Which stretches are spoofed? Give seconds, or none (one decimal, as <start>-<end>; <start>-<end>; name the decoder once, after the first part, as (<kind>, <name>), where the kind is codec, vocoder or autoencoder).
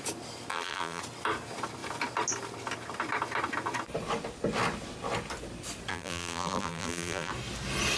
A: 0.5-1.0 (vocoder, BigVGAN v2); 5.9-7.3